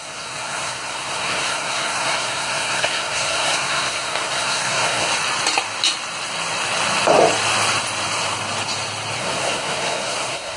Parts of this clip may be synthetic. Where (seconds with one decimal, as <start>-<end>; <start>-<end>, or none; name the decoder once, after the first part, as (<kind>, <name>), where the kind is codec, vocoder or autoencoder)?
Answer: 0.0-5.1 (codec, SNAC); 9.2-10.6